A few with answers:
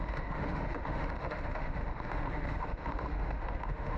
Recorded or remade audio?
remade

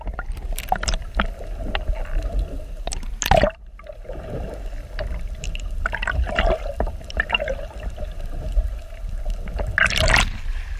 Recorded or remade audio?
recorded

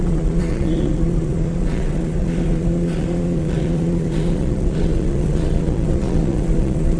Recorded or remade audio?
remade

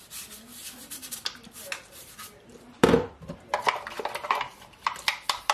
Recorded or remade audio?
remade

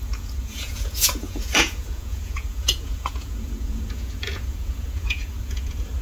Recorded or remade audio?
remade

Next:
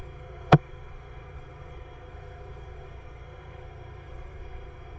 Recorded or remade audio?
remade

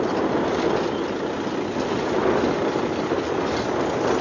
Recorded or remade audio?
recorded